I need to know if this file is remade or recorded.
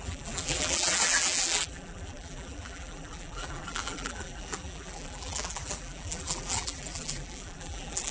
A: remade